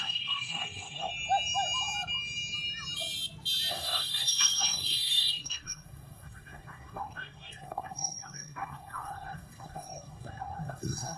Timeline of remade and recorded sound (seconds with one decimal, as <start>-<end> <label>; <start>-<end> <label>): 0.0-1.1 remade; 1.1-3.7 recorded; 3.7-11.2 remade